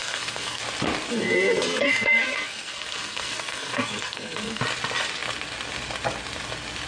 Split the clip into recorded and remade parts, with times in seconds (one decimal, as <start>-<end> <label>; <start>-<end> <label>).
0.0-0.6 remade; 0.6-1.1 recorded; 1.1-4.6 remade; 4.6-6.9 recorded